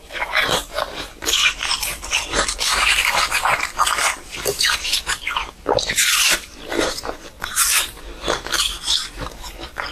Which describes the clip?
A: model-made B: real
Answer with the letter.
A